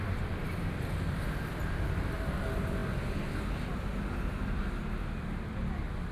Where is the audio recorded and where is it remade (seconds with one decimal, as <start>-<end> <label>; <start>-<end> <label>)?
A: 0.0-6.1 recorded